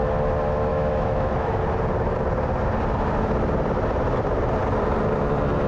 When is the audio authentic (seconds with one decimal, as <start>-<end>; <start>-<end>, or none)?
0.0-0.7; 1.6-5.7